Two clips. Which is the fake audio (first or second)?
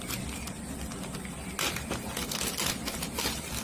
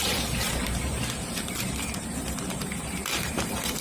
second